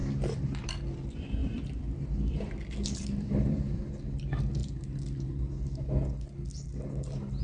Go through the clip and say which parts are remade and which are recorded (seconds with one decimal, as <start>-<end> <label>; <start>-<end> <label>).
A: 0.0-0.7 remade; 0.7-1.4 recorded; 1.4-3.8 remade; 3.8-7.4 recorded